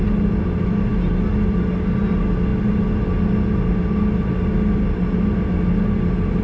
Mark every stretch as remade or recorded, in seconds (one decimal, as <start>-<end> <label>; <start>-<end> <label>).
0.0-6.4 recorded